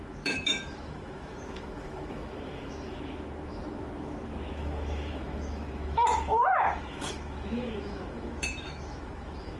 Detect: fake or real fake